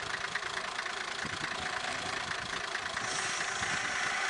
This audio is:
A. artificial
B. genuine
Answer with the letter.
B